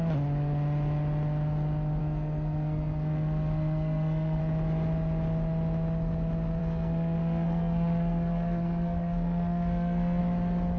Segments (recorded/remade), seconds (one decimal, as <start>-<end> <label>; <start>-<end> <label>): 0.0-2.0 recorded; 2.0-4.4 remade; 4.4-6.6 recorded; 6.6-10.2 remade; 10.2-10.8 recorded

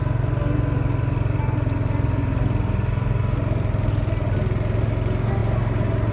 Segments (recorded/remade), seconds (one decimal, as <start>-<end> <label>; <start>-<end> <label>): 0.0-6.1 recorded